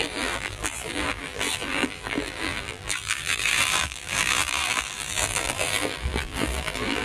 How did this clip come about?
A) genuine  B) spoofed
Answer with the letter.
B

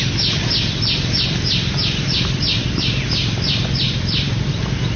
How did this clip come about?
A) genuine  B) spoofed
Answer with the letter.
B